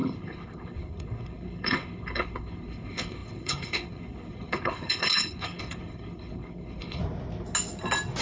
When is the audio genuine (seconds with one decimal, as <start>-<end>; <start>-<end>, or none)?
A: 7.0-8.2